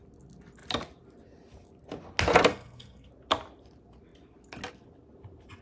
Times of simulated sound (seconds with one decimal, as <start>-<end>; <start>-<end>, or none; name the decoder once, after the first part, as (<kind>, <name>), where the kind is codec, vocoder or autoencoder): 2.5-3.1 (codec, SNAC)